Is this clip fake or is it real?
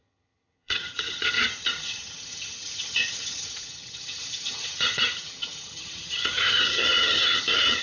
fake